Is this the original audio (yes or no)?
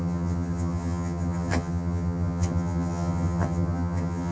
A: no